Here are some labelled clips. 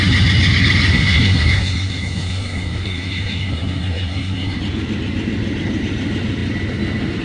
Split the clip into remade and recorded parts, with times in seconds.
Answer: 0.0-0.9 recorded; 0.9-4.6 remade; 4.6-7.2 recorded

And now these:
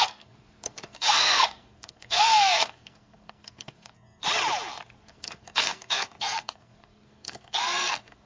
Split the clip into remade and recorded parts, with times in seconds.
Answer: 0.0-4.2 remade; 4.2-5.0 recorded; 5.0-8.3 remade

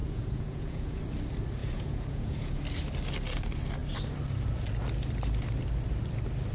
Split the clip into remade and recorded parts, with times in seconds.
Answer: 0.0-1.0 remade; 1.0-1.6 recorded; 1.6-2.6 remade; 2.6-6.5 recorded

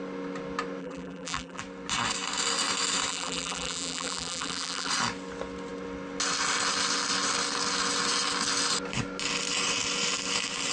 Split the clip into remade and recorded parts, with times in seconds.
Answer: 0.0-0.8 recorded; 0.8-1.6 remade; 1.6-3.1 recorded; 3.1-4.9 remade; 4.9-10.7 recorded

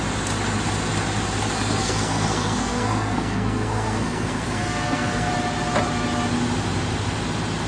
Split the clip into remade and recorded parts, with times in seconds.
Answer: 0.0-1.8 recorded; 1.8-5.3 remade; 5.3-7.7 recorded

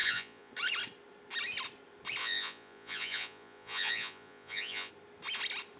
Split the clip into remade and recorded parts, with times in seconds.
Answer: 0.0-0.5 remade; 0.5-2.2 recorded; 2.2-4.9 remade; 4.9-5.8 recorded

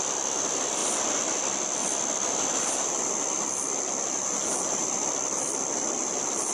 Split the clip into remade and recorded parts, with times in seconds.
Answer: 0.0-0.8 recorded; 0.8-1.4 remade; 1.4-1.8 recorded; 1.8-2.7 remade; 2.7-6.5 recorded